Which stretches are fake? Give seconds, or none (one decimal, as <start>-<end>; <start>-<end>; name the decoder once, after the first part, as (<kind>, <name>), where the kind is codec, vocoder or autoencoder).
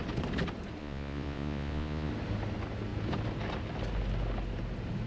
0.8-2.1 (vocoder, Vocos)